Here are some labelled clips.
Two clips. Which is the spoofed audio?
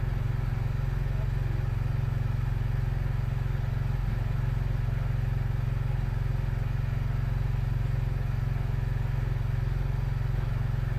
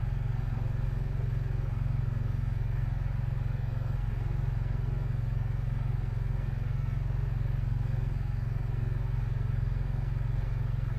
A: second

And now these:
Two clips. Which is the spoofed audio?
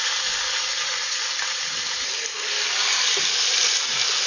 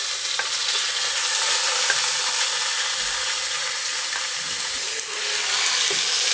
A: first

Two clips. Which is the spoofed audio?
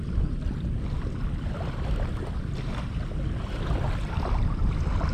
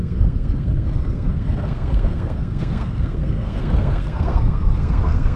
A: second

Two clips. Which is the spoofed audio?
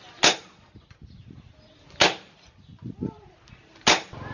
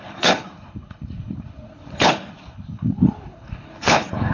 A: second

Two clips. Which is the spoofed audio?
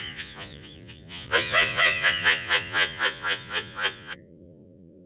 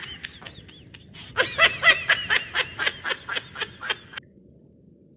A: first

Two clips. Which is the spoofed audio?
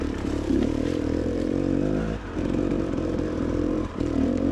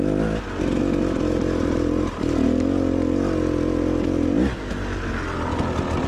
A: first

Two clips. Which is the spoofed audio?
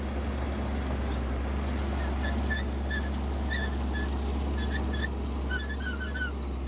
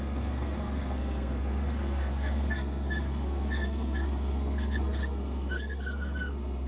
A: second